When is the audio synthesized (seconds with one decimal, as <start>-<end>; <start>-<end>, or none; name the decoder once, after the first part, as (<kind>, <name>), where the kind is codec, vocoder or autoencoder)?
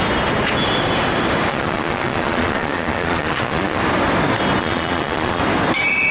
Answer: 1.5-3.8 (vocoder, Vocos); 4.6-5.4